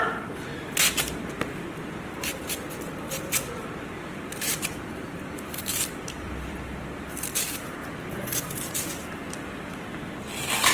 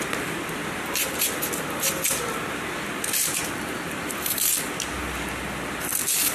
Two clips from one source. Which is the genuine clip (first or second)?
second